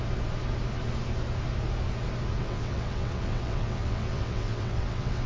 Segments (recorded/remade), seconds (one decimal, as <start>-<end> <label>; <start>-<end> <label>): 0.0-2.4 recorded; 2.4-5.3 remade